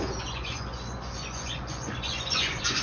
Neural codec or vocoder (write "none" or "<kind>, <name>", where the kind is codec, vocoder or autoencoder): vocoder, Vocos